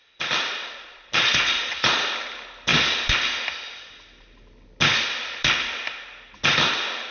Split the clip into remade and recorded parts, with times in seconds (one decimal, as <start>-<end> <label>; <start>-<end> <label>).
0.0-0.6 recorded; 0.6-2.0 remade; 2.0-7.1 recorded